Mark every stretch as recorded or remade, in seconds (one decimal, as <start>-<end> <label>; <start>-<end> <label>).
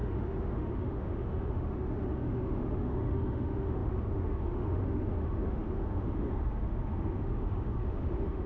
0.0-8.5 remade